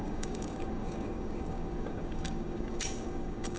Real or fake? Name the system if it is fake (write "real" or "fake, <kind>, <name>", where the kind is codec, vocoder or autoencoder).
fake, codec, DAC